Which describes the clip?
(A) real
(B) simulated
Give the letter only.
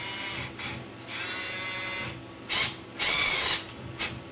A